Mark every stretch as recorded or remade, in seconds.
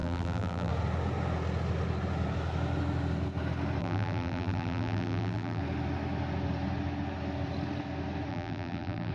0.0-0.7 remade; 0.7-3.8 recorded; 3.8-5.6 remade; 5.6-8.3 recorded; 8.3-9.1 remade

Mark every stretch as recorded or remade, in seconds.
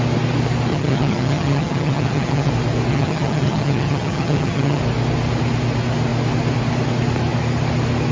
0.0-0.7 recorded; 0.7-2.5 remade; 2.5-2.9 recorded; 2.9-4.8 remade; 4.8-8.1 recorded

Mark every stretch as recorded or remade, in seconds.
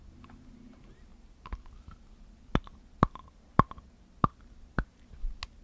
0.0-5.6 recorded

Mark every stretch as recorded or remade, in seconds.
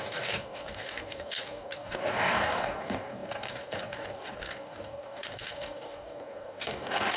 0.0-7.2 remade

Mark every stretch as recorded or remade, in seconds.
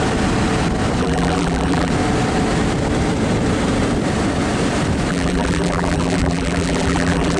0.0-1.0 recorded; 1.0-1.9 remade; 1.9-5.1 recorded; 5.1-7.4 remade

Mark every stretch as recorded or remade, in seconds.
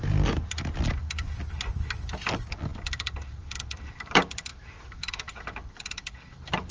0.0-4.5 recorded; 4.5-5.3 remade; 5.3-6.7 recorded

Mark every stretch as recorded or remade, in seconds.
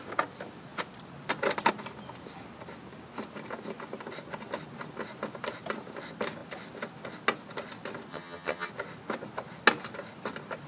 0.0-8.1 recorded; 8.1-8.7 remade; 8.7-10.7 recorded